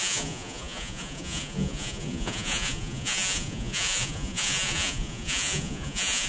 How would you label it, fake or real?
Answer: fake